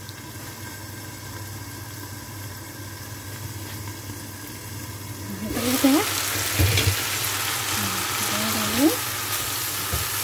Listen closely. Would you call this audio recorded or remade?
recorded